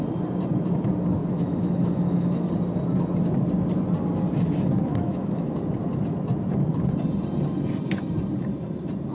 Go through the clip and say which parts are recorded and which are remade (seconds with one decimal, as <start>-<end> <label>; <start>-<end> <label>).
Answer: 0.0-1.2 recorded; 1.2-2.5 remade; 2.5-4.9 recorded; 4.9-5.5 remade; 5.5-9.1 recorded